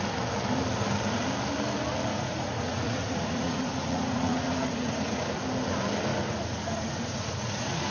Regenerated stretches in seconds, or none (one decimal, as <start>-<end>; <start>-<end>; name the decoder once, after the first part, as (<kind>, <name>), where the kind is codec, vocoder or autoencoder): 2.1-5.3 (vocoder, Vocos); 6.1-7.9